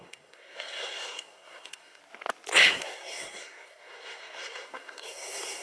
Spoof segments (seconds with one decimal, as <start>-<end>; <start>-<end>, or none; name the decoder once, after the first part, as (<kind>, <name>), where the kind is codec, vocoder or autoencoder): 0.0-2.0 (codec, SNAC); 2.7-5.6